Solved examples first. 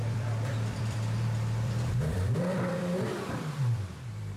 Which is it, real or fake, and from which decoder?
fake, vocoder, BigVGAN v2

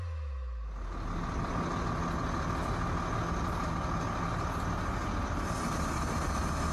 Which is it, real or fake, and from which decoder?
real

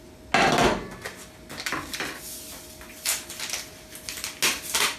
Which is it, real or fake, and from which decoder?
real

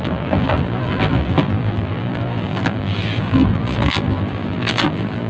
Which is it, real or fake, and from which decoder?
fake, vocoder, BigVGAN v2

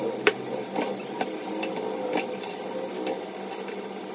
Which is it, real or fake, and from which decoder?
fake, vocoder, BigVGAN v2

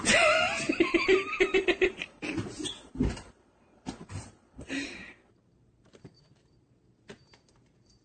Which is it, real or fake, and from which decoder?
fake, vocoder, BigVGAN v2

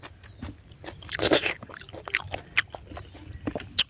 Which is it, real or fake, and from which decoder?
real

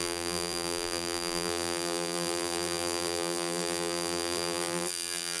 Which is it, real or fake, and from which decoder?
fake, vocoder, BigVGAN v2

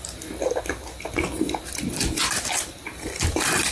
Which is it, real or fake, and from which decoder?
fake, vocoder, BigVGAN v2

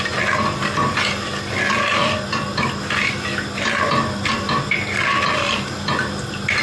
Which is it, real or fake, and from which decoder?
real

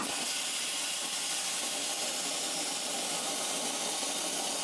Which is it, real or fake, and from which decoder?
fake, vocoder, BigVGAN v2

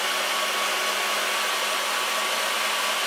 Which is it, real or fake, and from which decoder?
real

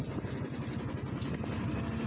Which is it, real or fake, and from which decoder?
real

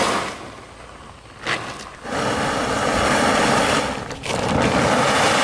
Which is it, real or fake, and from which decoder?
real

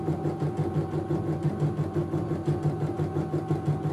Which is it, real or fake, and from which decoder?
real